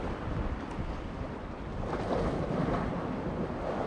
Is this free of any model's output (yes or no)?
yes